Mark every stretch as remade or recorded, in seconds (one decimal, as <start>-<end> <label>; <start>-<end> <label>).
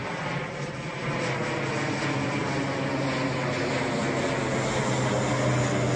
0.0-6.0 recorded